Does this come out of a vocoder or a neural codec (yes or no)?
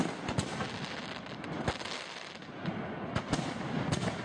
no